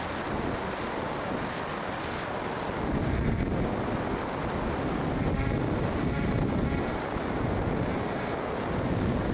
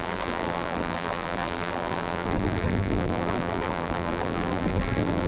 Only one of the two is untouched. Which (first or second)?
first